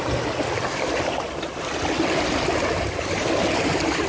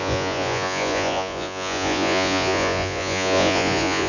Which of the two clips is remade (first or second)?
second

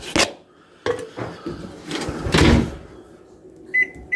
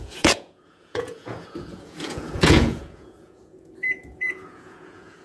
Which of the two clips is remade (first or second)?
second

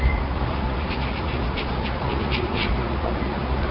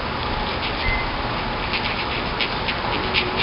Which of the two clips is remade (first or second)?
first